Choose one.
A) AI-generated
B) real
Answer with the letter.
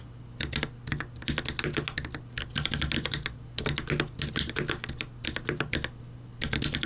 B